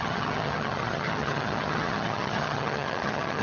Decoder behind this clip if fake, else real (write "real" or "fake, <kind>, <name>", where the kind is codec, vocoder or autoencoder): fake, vocoder, HiFi-GAN